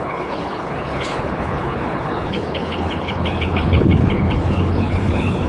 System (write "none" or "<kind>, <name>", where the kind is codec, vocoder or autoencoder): codec, HILCodec